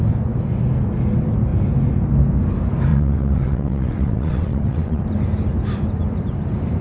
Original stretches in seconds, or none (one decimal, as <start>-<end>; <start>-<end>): 0.0-2.9; 5.0-6.8